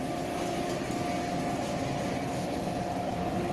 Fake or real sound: real